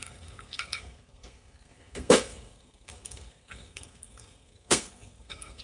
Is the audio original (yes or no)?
no